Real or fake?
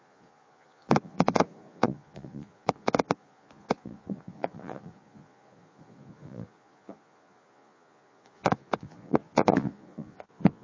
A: fake